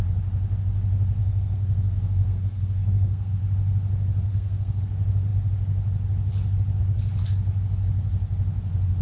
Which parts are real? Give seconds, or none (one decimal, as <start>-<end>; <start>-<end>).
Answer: 0.0-1.2; 3.4-4.3; 4.8-9.0